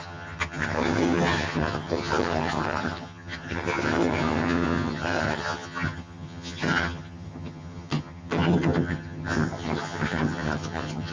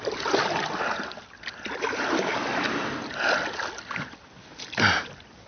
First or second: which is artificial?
first